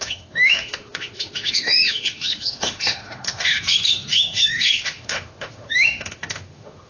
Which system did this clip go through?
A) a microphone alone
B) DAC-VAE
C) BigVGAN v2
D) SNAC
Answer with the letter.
B